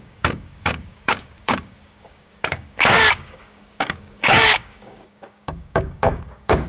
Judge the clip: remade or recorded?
remade